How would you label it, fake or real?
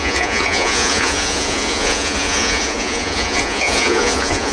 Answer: fake